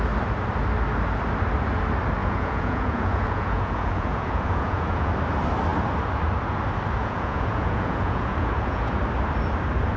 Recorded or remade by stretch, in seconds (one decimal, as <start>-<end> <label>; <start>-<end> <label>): 0.0-2.2 recorded; 2.2-5.1 remade; 5.1-7.0 recorded; 7.0-9.0 remade; 9.0-10.0 recorded